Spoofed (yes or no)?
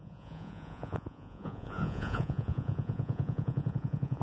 yes